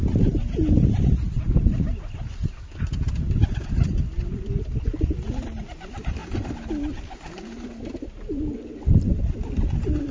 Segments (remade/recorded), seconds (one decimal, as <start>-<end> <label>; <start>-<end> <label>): 0.0-10.1 recorded